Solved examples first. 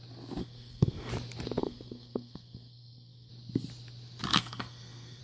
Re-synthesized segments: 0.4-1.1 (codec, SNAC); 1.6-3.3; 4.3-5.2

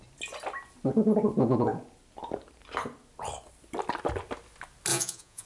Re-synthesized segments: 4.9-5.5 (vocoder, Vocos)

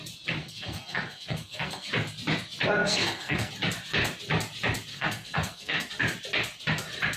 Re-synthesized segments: 0.4-1.9 (codec, SNAC); 2.8-3.5; 4.9-5.9

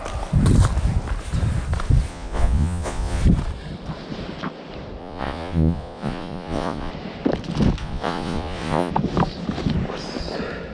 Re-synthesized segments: 2.1-3.2 (vocoder, Vocos); 5.0-6.9; 7.8-8.9

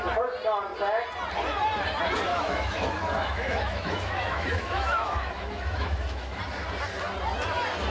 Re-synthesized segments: 2.3-6.4 (autoencoder, DAC-VAE)

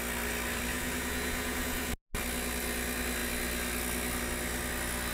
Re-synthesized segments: 0.7-1.9 (vocoder, Vocos)